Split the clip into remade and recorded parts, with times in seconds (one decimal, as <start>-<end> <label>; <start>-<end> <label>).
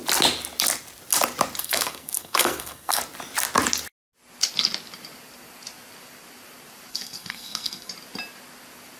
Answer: 0.0-1.6 recorded; 1.6-3.0 remade; 3.0-6.9 recorded; 6.9-7.9 remade; 7.9-9.0 recorded